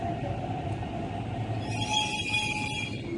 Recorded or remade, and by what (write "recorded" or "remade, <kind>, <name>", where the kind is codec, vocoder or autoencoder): recorded